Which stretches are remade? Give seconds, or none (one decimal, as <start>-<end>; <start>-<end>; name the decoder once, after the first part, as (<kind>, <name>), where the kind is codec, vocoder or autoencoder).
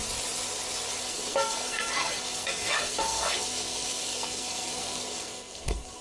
1.0-6.0 (codec, SNAC)